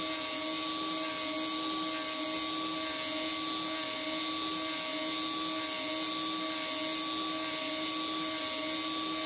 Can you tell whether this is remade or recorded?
recorded